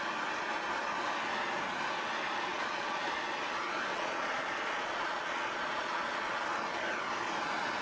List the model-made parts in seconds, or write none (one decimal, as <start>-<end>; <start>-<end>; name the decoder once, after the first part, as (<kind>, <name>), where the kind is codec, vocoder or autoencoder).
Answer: 2.5-3.1 (vocoder, Vocos); 3.9-6.4